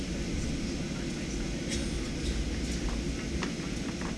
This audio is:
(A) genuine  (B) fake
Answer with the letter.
A